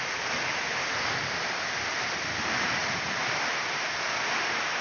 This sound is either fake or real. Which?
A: real